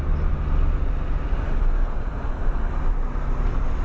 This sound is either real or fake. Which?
real